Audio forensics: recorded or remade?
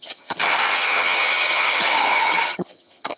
remade